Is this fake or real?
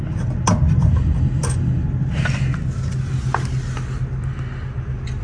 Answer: real